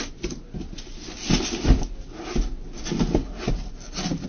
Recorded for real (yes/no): yes